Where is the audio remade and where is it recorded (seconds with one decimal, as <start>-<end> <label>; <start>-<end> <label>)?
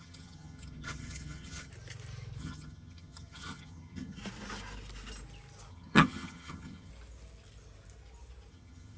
0.0-1.7 remade; 1.7-2.4 recorded; 2.4-4.2 remade; 4.2-5.7 recorded; 5.7-6.9 remade; 6.9-8.5 recorded; 8.5-9.0 remade